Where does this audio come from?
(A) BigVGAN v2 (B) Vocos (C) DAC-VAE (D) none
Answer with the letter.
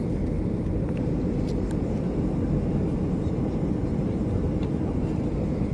D